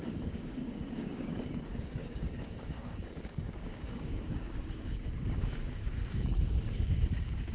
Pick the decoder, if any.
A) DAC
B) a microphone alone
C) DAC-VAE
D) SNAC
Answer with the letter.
A